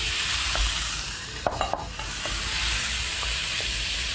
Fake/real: fake